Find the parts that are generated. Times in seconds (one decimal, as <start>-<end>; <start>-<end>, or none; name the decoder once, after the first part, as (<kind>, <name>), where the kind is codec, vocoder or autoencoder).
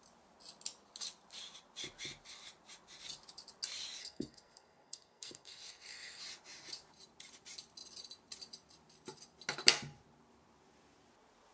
4.0-6.2 (codec, SNAC)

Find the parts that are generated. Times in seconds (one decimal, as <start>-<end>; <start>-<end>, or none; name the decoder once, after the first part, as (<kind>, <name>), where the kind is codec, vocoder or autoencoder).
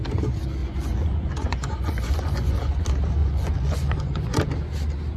0.6-2.8 (vocoder, Vocos); 3.2-4.4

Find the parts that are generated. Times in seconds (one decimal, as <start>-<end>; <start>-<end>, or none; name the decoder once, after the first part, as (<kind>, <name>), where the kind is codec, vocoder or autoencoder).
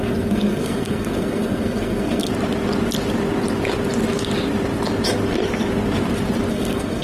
0.0-2.3 (codec, SNAC); 6.5-7.0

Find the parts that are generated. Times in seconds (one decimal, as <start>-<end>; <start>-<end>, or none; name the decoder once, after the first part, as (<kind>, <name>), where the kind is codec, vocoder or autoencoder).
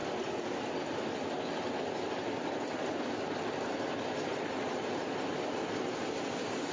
0.0-3.1 (vocoder, BigVGAN v2)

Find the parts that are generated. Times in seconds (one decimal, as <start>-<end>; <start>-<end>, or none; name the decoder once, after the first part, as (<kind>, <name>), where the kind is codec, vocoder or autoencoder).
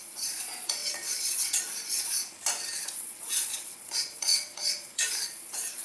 0.0-2.2 (vocoder, Vocos); 2.8-5.8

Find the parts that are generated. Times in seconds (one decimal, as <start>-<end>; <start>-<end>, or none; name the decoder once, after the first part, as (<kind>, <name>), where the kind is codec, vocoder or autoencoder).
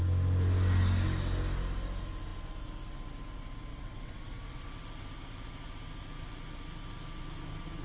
3.7-4.7 (vocoder, WaveNeXt)